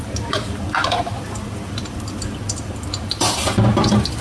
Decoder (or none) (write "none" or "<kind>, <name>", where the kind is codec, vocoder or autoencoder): vocoder, BigVGAN v2